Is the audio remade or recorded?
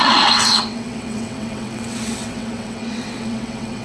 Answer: remade